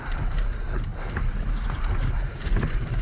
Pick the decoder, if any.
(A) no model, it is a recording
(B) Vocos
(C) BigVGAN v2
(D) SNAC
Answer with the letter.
A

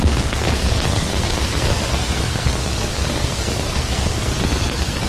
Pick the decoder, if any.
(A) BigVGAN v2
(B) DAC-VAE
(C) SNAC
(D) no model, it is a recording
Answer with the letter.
C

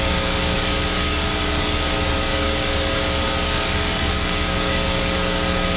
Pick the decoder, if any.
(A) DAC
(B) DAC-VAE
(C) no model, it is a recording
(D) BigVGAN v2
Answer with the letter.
A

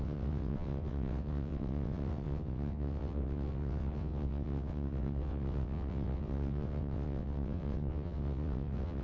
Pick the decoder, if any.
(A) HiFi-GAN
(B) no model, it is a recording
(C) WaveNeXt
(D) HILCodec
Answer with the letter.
C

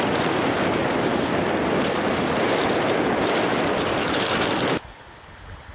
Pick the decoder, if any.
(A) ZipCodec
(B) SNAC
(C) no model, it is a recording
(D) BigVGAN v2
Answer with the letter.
C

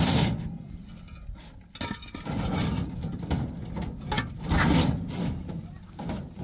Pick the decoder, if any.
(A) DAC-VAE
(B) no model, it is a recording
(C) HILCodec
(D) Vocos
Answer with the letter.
B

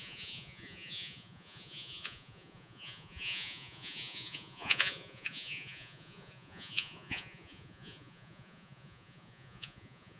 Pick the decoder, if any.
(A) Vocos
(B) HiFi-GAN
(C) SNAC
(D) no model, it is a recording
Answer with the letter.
A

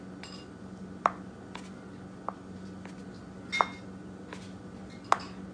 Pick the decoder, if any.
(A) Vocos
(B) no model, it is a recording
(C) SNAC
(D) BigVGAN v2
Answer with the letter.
B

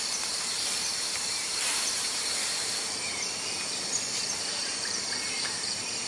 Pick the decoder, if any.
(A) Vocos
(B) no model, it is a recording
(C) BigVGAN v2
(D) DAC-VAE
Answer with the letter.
C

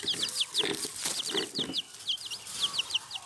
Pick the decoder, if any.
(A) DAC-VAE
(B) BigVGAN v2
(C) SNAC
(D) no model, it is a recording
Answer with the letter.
D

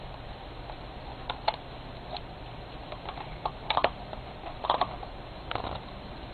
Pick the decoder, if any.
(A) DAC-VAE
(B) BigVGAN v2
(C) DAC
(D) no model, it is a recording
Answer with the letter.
D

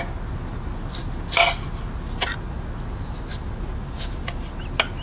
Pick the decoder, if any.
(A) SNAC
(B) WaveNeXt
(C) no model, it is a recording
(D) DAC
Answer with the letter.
C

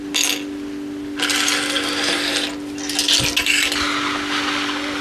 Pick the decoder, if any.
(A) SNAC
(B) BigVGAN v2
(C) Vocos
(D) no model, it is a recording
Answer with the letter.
D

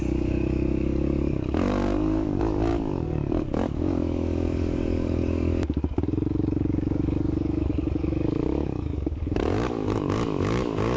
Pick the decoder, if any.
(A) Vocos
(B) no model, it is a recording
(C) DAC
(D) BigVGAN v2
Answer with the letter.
C